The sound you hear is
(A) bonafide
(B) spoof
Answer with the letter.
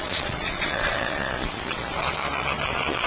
B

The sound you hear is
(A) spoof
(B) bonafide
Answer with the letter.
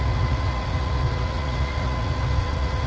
A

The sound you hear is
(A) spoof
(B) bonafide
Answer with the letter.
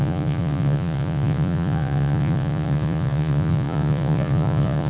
A